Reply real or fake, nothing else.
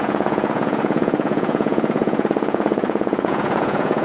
fake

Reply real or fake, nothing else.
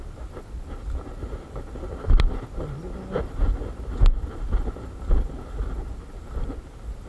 real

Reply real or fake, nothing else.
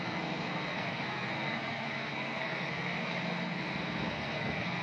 fake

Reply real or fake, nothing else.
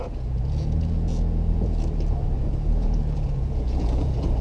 fake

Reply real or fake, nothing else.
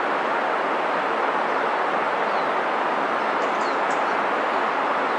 real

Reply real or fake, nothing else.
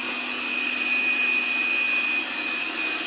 real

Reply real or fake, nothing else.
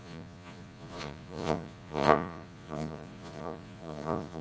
fake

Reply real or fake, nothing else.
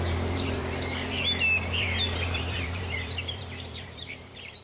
fake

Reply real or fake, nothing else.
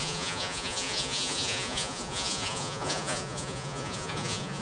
fake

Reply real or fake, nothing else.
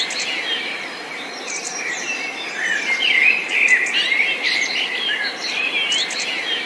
real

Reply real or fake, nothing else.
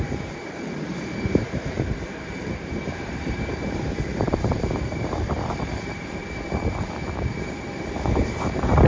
fake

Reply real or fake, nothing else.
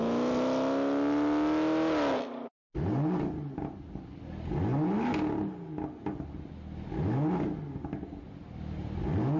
real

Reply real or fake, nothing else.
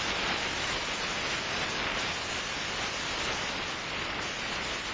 real